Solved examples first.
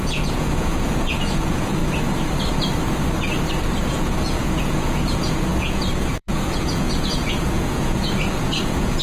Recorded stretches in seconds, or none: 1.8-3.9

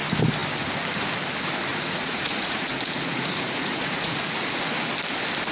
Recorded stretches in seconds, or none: 0.0-1.7; 4.4-5.5

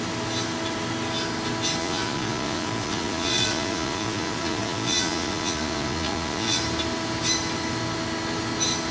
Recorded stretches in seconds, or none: 0.0-1.8; 6.6-8.9

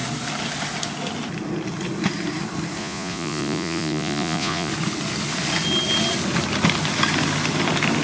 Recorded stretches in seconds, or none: 0.0-2.8; 4.7-8.0

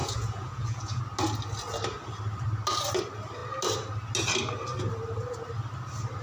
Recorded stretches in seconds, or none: 1.0-6.2

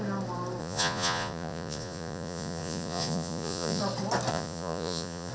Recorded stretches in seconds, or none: 0.0-0.6; 3.8-4.3